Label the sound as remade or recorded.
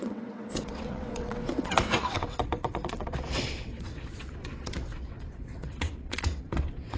remade